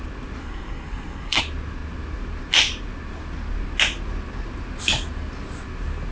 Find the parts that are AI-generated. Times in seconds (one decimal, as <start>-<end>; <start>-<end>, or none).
0.4-1.4